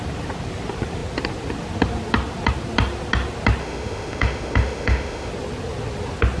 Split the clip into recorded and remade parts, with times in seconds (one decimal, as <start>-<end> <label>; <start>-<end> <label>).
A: 0.0-3.6 recorded; 3.6-5.3 remade; 5.3-6.4 recorded